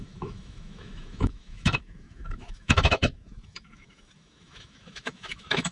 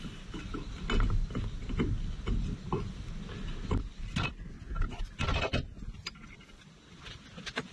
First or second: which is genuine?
second